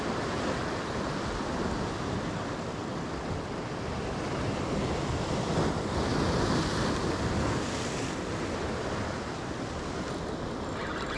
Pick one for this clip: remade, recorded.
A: recorded